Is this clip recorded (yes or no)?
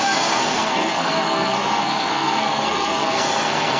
no